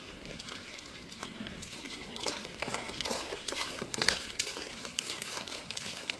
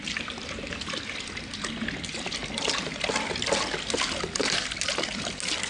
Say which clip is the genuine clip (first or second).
second